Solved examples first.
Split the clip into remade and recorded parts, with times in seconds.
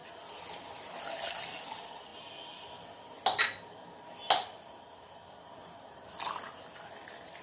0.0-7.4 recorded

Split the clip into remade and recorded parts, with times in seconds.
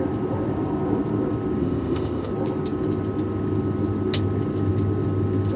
0.0-1.6 recorded; 1.6-2.3 remade; 2.3-5.6 recorded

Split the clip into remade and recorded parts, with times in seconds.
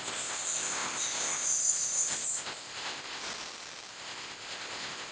0.0-3.2 remade; 3.2-3.9 recorded; 3.9-5.1 remade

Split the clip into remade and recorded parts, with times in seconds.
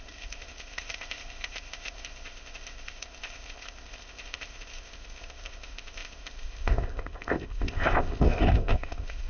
0.0-9.3 remade